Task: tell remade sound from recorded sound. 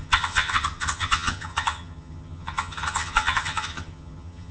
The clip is remade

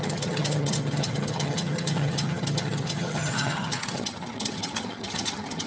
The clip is remade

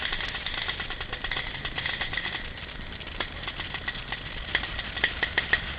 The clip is recorded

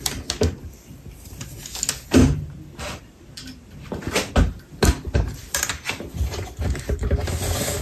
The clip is recorded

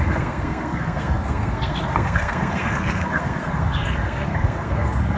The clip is remade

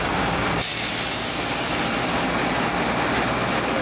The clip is recorded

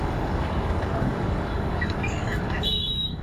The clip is remade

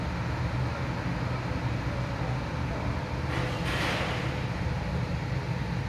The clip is recorded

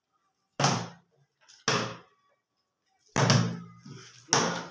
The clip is recorded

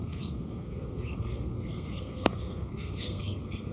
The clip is remade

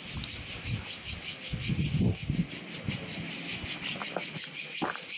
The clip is recorded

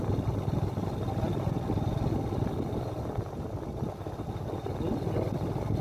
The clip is recorded